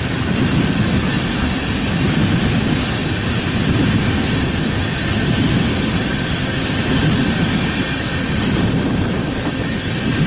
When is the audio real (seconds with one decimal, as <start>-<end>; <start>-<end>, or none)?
0.0-9.2; 9.9-10.3